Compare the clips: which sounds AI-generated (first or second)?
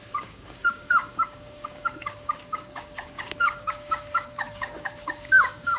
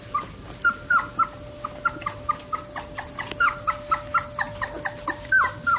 first